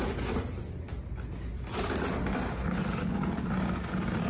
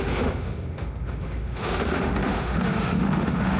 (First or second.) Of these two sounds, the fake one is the second